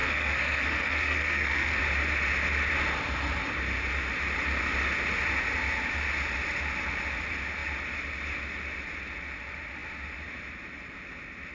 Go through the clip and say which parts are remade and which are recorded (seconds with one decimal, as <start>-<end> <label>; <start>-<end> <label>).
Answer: 0.0-1.8 remade; 1.8-11.5 recorded